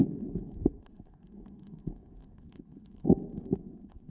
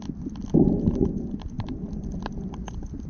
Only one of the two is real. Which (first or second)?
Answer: second